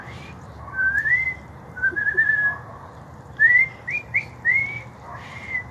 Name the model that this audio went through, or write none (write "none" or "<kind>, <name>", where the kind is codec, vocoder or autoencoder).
vocoder, BigVGAN v2